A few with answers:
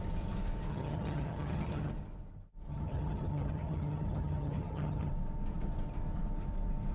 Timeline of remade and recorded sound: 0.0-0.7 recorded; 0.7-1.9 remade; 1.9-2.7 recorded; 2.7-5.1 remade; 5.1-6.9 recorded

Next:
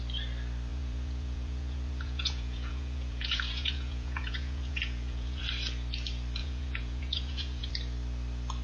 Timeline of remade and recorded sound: 0.0-0.7 recorded; 0.7-5.4 remade; 5.4-6.4 recorded; 6.4-7.7 remade; 7.7-8.6 recorded